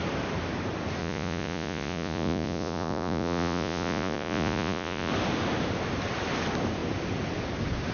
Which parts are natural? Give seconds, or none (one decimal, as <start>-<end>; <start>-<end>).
0.0-1.0; 5.1-7.9